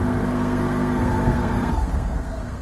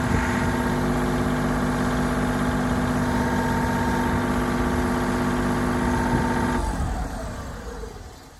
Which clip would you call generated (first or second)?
first